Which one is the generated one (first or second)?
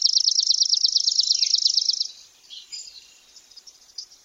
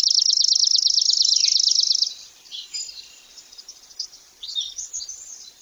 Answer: first